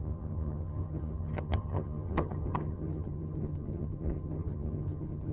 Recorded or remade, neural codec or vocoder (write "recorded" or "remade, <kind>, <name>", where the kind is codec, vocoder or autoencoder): remade, vocoder, HiFi-GAN